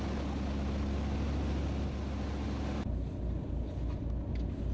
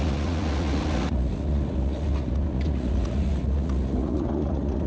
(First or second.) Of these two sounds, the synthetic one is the second